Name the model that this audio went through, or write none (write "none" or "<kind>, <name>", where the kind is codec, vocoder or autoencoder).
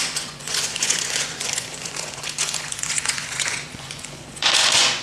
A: vocoder, Vocos